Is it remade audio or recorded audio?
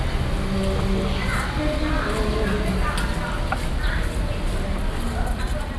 recorded